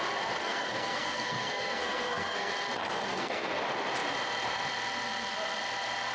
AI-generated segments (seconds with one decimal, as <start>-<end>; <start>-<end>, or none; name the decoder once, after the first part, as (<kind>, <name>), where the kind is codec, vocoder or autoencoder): 0.4-2.5 (codec, SNAC); 3.1-3.6